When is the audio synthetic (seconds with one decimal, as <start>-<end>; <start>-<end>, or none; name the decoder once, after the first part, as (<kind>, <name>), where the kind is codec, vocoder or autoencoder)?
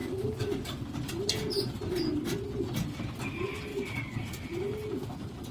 0.0-0.5 (codec, DAC)